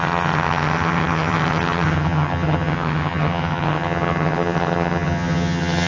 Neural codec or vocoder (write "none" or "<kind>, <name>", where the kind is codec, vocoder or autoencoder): vocoder, HiFi-GAN